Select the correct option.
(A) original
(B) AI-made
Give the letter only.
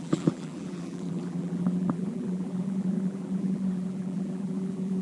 B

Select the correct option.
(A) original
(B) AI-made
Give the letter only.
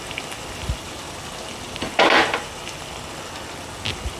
A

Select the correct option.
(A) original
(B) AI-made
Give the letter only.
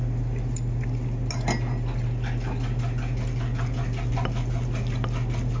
A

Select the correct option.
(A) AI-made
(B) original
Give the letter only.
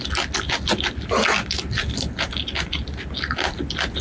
B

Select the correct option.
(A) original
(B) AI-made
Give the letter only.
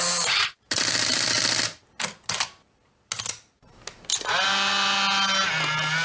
A